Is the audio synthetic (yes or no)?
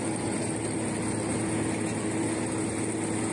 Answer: no